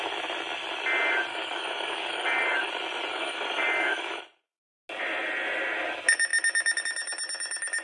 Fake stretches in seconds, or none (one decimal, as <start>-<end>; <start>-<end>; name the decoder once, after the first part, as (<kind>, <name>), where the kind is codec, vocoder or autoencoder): 1.3-2.7 (codec, DAC); 3.1-4.2